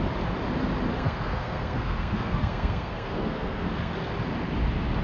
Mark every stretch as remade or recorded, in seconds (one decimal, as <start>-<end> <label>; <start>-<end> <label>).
0.0-0.9 recorded; 0.9-3.9 remade; 3.9-5.0 recorded